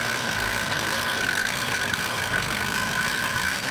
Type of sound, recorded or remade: remade